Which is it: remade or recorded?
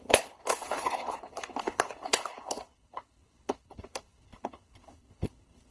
remade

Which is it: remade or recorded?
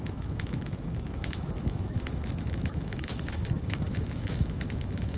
remade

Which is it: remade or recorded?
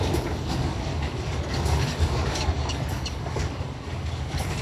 remade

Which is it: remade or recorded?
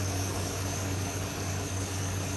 remade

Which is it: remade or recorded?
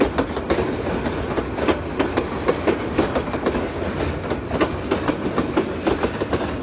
recorded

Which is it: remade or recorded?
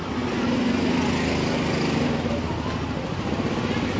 recorded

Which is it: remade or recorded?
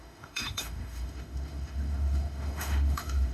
remade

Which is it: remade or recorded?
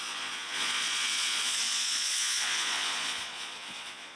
remade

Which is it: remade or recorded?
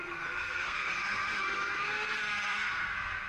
remade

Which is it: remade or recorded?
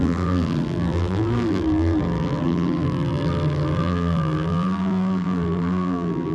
remade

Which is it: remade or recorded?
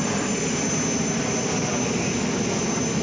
recorded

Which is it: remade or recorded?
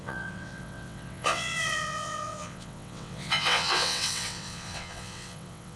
remade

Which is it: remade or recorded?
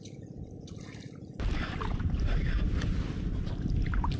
recorded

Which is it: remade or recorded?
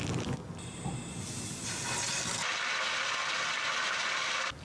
recorded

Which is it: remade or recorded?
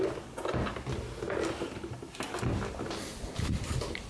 recorded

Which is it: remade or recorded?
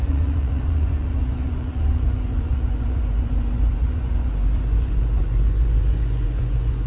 remade